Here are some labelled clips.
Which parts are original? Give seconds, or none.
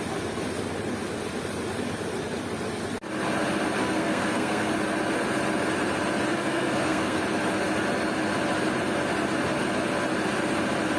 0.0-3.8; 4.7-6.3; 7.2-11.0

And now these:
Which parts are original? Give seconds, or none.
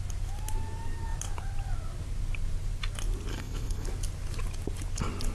0.0-3.3; 3.9-5.3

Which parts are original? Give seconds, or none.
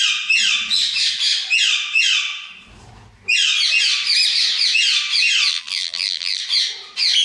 0.0-5.5; 6.4-7.2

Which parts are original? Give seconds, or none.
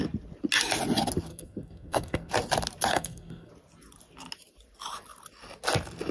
0.0-1.3; 2.3-2.9; 3.5-6.1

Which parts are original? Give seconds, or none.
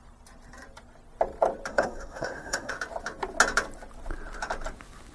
0.0-1.7; 2.7-5.1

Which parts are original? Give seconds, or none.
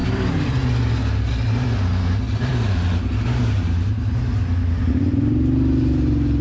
1.0-6.4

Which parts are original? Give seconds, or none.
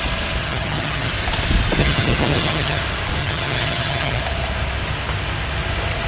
0.0-0.4; 1.1-1.8; 2.8-3.2; 4.2-6.1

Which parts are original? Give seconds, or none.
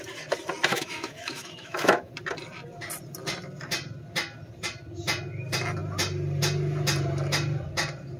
0.0-0.7; 2.1-8.2